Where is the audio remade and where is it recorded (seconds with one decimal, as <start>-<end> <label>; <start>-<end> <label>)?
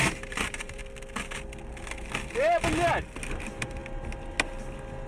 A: 0.0-0.8 remade; 0.8-3.3 recorded; 3.3-3.8 remade; 3.8-5.1 recorded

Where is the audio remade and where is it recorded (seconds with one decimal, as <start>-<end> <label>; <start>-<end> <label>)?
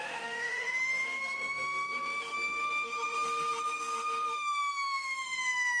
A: 0.0-5.8 remade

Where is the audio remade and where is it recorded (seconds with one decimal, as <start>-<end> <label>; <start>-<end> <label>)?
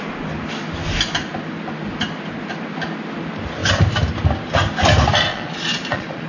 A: 0.0-5.3 recorded; 5.3-6.3 remade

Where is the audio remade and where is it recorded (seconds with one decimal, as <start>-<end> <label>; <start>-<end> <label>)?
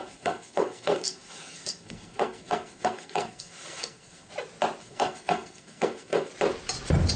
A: 0.0-4.3 remade; 4.3-4.8 recorded; 4.8-6.3 remade; 6.3-7.2 recorded